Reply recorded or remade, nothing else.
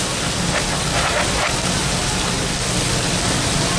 recorded